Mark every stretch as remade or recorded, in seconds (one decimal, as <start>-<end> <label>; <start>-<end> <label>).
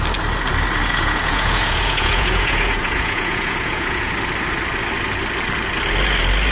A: 0.0-0.8 recorded; 0.8-4.1 remade; 4.1-6.5 recorded